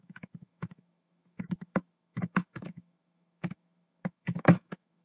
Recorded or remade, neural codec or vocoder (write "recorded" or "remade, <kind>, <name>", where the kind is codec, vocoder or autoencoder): remade, autoencoder, DAC-VAE